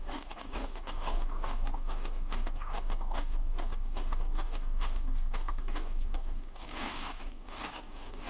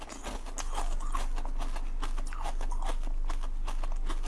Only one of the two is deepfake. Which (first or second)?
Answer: first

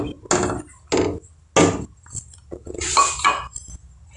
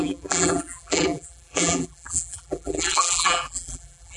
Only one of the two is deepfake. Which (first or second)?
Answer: second